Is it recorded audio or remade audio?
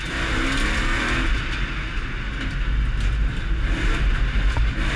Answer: recorded